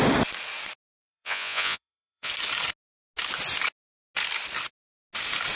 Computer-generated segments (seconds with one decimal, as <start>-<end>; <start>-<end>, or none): 1.0-2.3